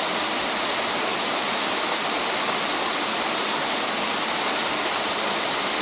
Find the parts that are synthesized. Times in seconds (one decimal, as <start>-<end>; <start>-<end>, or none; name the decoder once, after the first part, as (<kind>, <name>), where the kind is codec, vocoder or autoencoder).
1.1-3.1 (vocoder, BigVGAN v2)